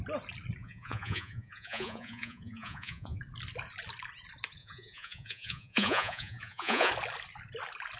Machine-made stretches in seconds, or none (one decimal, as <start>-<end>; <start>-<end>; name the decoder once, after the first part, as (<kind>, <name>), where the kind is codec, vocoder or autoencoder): 0.6-3.2 (vocoder, Vocos); 4.6-6.9